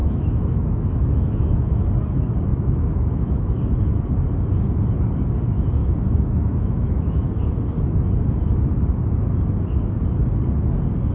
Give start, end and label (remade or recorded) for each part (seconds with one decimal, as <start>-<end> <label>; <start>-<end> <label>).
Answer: 0.0-1.9 remade; 1.9-2.5 recorded; 2.5-3.6 remade; 3.6-5.8 recorded; 5.8-7.3 remade; 7.3-11.1 recorded